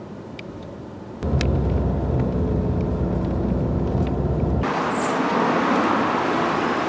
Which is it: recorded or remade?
recorded